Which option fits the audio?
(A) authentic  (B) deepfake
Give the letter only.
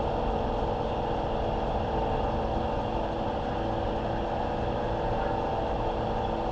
A